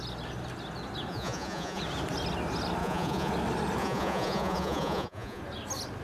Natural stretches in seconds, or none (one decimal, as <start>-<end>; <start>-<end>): 0.0-1.1; 1.8-2.8; 3.3-3.8; 5.4-6.0